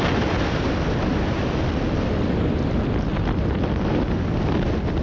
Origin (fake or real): real